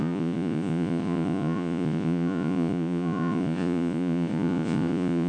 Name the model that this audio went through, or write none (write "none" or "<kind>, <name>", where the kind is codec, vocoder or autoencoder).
vocoder, Vocos